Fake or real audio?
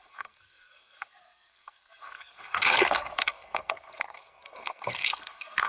fake